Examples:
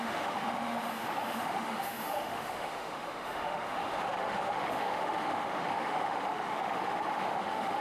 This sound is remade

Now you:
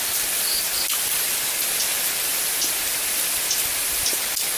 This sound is recorded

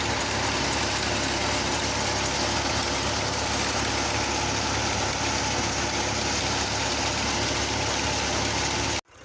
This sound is recorded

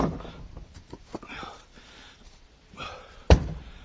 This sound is remade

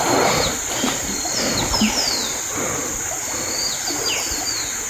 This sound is recorded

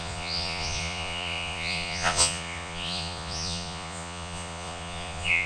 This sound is remade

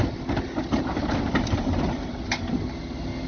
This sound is recorded